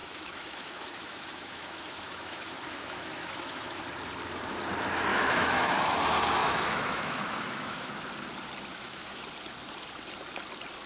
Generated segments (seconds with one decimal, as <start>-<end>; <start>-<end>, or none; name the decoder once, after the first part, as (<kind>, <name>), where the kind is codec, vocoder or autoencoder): 0.0-3.8 (autoencoder, DAC-VAE); 5.1-6.0; 6.4-7.9; 8.7-9.2